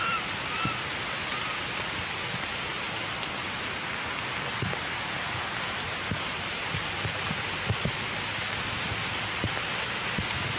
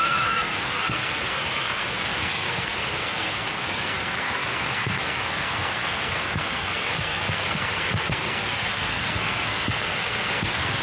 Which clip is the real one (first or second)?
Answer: first